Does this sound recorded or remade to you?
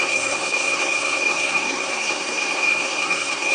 remade